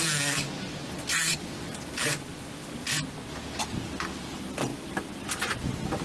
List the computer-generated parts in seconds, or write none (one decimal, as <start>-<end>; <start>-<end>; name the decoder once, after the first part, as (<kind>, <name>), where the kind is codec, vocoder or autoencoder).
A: none